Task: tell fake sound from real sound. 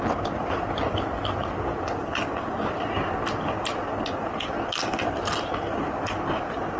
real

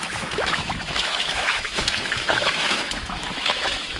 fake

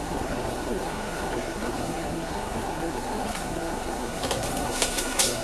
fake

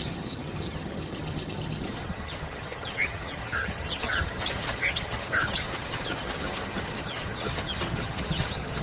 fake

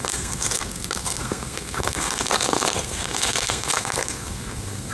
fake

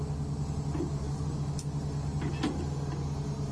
real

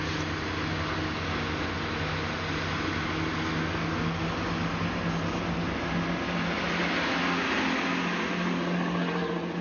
real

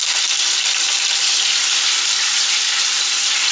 fake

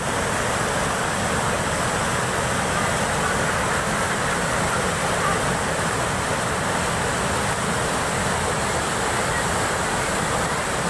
real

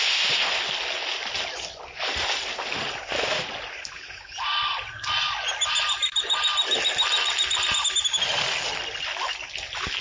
real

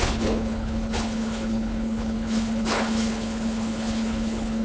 fake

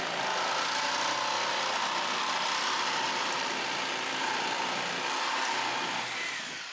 real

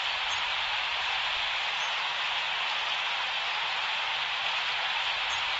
real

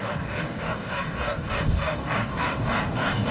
fake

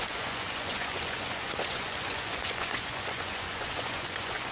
fake